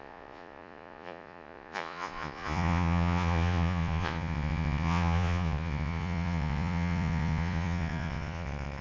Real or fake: fake